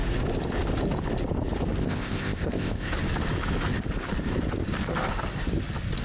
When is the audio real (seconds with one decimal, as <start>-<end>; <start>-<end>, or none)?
0.0-1.8; 2.9-6.0